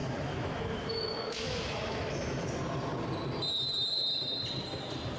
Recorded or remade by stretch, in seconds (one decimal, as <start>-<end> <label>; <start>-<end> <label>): 0.0-2.6 remade; 2.6-5.2 recorded